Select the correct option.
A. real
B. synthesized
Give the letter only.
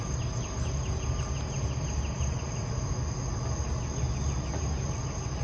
A